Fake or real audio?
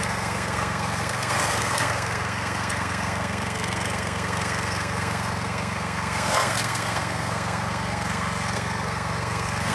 fake